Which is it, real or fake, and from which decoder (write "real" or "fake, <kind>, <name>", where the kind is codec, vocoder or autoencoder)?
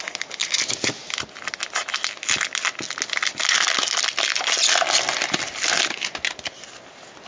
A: real